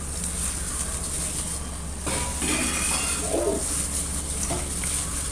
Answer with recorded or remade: recorded